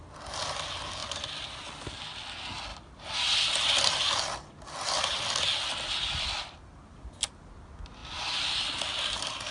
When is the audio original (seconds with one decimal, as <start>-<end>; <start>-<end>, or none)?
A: 0.0-1.0; 1.6-2.7; 4.2-8.0; 9.0-9.5